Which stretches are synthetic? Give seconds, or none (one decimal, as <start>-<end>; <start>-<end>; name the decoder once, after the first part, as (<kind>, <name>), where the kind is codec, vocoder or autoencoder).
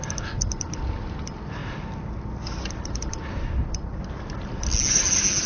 none